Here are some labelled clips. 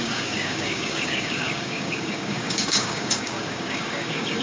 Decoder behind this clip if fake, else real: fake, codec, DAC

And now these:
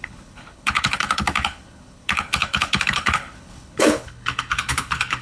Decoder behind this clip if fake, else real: fake, codec, HILCodec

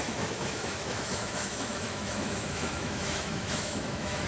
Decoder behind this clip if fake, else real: fake, autoencoder, DAC-VAE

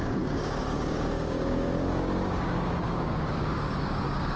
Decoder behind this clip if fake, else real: fake, codec, DAC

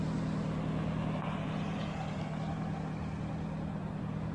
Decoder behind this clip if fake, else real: real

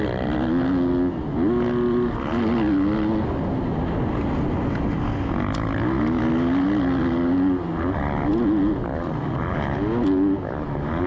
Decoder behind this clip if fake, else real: real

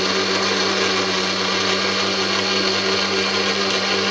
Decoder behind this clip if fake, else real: real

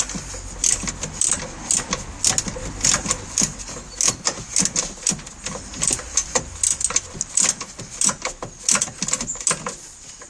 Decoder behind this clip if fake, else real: real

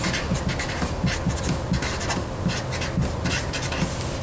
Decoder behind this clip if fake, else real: real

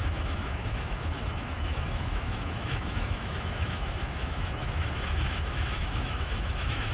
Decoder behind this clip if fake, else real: fake, autoencoder, DAC-VAE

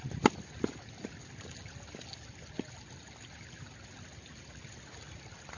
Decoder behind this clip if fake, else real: real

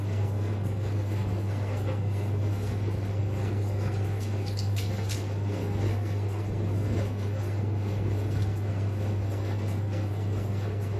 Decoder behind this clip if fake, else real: fake, codec, SNAC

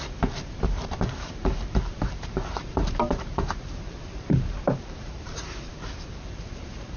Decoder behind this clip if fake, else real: fake, vocoder, BigVGAN v2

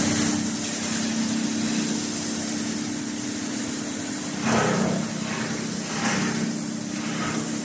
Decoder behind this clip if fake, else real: real